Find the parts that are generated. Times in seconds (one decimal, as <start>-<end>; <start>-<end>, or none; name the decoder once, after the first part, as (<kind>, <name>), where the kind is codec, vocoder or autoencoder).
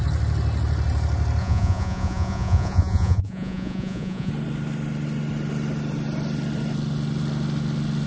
1.4-4.3 (vocoder, Vocos)